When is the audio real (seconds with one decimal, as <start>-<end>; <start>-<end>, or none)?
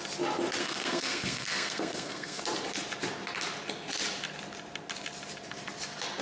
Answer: 0.0-0.6; 2.4-6.2